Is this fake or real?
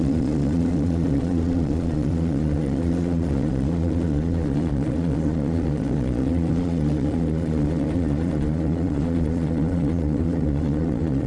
fake